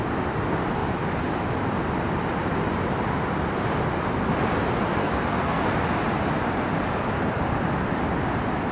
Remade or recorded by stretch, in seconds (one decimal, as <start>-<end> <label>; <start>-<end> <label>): 0.0-5.0 recorded; 5.0-5.6 remade; 5.6-8.7 recorded